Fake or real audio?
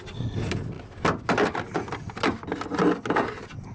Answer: real